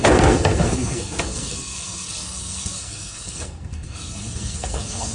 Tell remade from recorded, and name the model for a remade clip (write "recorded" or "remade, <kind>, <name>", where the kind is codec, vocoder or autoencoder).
remade, codec, SNAC